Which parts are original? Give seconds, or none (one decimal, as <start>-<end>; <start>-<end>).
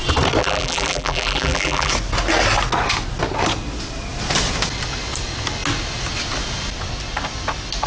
0.0-0.4; 1.9-7.9